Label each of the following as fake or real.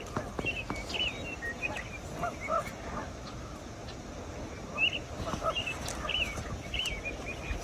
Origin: real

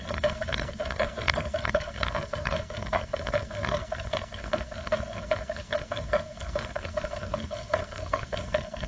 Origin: fake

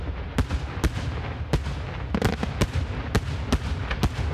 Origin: real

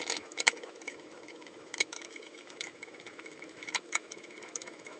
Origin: fake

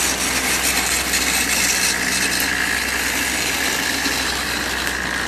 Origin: real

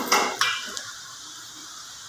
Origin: fake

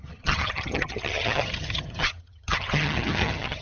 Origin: fake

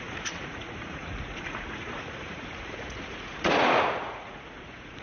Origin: fake